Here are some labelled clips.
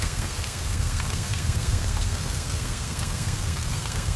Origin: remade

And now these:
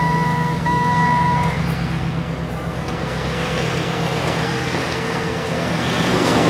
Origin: remade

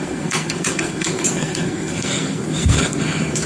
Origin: remade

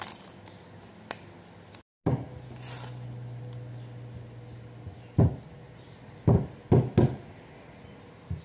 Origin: recorded